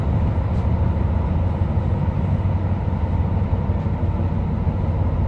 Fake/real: real